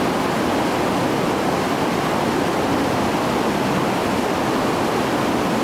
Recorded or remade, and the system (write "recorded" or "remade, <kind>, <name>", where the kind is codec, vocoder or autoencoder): recorded